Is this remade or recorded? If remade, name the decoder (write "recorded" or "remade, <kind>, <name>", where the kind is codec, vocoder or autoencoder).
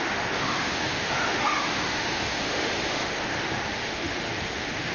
remade, autoencoder, DAC-VAE